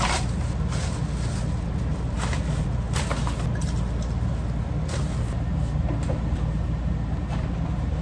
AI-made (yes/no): no